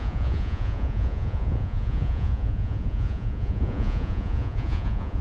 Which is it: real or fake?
fake